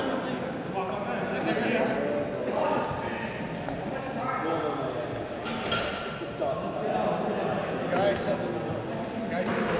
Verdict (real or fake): real